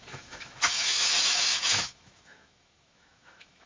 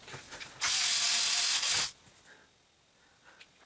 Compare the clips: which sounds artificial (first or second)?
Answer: first